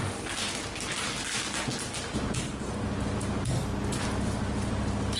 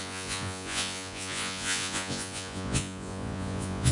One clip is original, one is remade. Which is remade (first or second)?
second